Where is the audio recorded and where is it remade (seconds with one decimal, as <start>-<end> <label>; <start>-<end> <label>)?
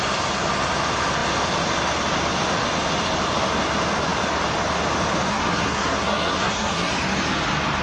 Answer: 0.0-5.3 recorded; 5.3-6.9 remade; 6.9-7.8 recorded